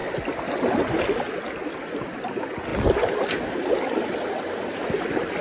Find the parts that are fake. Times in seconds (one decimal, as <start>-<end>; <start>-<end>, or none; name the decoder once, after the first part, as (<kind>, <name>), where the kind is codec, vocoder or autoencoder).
none